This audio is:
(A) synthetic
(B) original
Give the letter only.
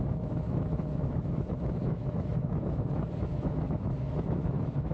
A